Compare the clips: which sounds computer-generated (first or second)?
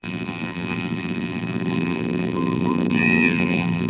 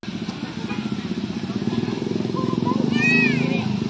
first